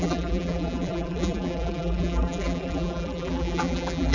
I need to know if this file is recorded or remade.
remade